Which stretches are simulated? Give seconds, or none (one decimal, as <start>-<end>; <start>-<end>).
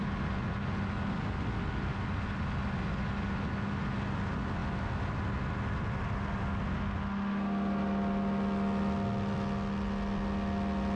none